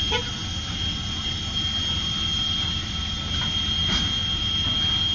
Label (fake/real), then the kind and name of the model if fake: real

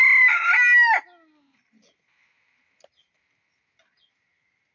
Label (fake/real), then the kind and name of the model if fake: real